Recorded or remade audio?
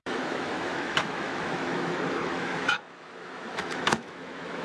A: remade